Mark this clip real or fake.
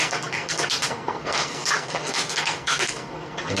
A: fake